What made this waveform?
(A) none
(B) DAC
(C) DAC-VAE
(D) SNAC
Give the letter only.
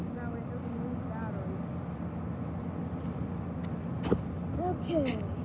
A